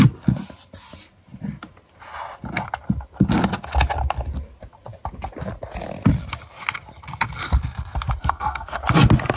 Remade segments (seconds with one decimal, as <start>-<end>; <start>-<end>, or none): 8.2-8.8